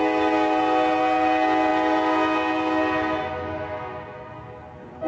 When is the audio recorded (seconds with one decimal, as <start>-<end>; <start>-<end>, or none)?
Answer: 0.0-5.1